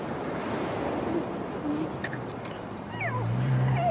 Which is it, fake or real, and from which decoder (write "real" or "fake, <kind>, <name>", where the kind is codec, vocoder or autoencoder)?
fake, vocoder, BigVGAN v2